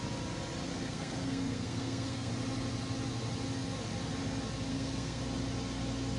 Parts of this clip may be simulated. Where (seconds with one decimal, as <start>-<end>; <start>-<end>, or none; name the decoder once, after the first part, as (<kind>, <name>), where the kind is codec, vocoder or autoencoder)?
0.7-2.3 (codec, SNAC); 4.7-5.2